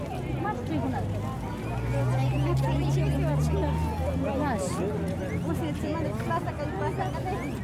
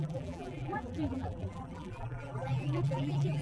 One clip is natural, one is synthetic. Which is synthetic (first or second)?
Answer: second